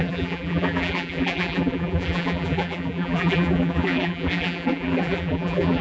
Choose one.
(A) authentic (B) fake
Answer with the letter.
B